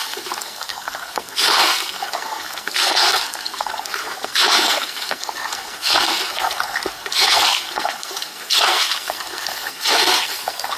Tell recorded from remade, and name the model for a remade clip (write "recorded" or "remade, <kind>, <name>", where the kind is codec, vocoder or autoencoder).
remade, codec, SNAC